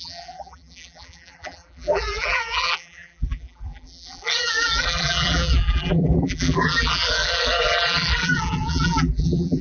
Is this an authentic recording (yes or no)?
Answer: no